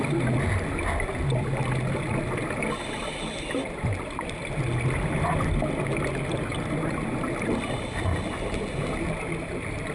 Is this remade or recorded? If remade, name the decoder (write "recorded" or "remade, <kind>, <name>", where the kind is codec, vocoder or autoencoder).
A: recorded